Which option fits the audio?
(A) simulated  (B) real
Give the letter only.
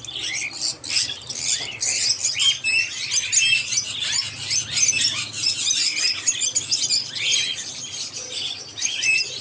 B